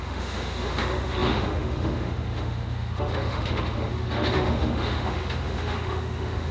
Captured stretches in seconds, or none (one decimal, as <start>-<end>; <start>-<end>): none